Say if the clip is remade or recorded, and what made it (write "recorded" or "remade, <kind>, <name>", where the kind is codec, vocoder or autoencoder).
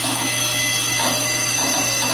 remade, autoencoder, DAC-VAE